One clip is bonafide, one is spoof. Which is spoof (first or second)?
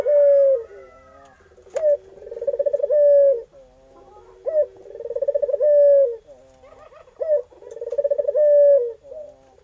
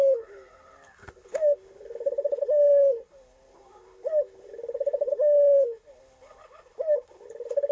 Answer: second